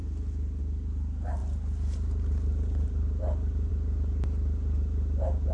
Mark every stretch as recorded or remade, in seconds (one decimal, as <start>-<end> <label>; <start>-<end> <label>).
0.0-5.5 recorded